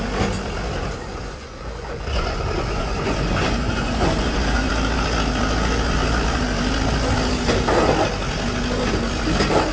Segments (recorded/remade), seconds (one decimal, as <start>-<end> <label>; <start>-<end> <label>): 0.0-0.6 recorded; 0.6-4.7 remade; 4.7-9.7 recorded